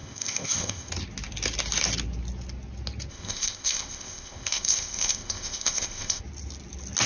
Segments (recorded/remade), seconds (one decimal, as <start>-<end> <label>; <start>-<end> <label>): 0.0-0.9 remade; 0.9-3.1 recorded; 3.1-6.2 remade; 6.2-7.1 recorded

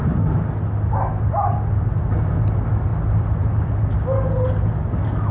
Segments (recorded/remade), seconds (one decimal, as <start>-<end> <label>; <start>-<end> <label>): 0.0-5.3 recorded

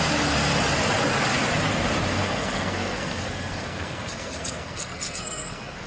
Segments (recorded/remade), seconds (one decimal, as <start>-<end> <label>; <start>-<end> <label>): 0.0-2.1 recorded; 2.1-5.9 remade

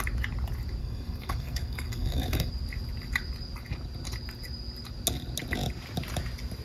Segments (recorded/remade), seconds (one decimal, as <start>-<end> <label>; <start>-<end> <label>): 0.0-0.8 recorded; 0.8-2.5 remade; 2.5-6.6 recorded

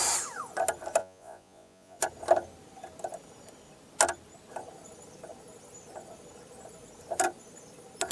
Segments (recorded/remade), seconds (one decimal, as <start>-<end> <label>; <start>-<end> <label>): 0.0-1.0 recorded; 1.0-2.0 remade; 2.0-8.1 recorded

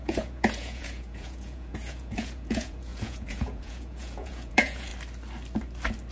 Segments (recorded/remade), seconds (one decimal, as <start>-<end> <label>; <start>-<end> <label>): 0.0-4.9 remade; 4.9-6.1 recorded